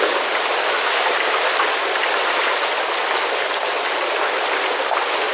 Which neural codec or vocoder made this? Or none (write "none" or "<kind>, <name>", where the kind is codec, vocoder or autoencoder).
none